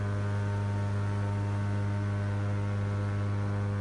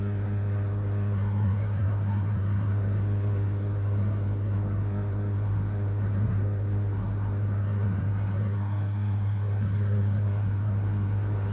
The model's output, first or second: second